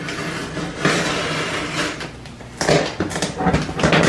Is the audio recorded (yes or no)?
yes